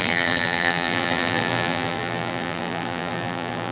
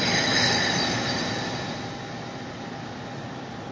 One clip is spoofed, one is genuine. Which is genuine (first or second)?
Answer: second